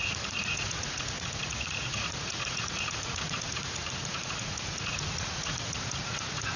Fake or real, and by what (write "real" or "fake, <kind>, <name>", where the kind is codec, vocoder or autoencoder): fake, vocoder, Vocos